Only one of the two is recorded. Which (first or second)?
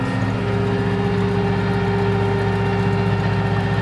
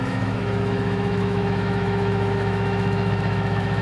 first